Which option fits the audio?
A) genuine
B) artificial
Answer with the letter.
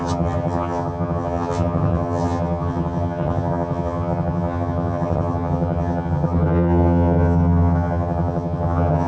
B